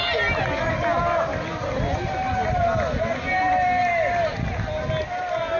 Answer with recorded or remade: recorded